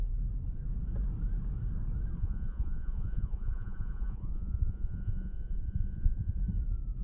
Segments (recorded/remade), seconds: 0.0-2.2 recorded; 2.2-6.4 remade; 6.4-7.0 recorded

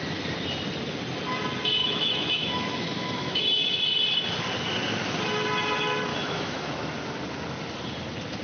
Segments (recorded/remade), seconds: 0.0-1.8 recorded; 1.8-3.4 remade; 3.4-6.1 recorded; 6.1-6.7 remade; 6.7-8.4 recorded

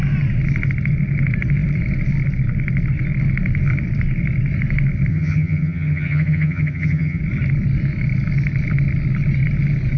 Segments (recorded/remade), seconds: 0.0-5.1 recorded; 5.1-7.2 remade; 7.2-10.0 recorded